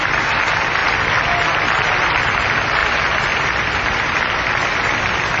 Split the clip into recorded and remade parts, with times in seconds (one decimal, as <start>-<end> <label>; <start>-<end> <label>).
0.0-5.4 recorded